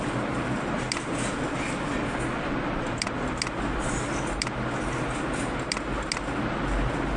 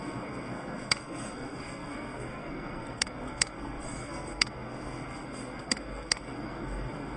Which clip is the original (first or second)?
first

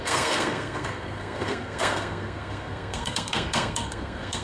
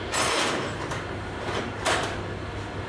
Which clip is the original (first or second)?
second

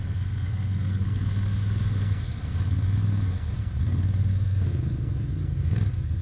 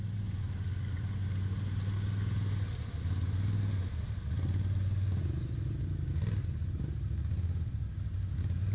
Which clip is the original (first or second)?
second